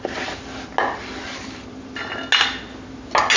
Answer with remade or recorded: recorded